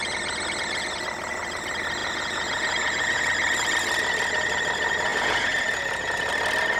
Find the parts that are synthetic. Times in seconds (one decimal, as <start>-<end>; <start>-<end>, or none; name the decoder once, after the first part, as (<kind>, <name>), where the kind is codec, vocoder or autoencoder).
2.0-3.2 (vocoder, Vocos); 5.1-6.3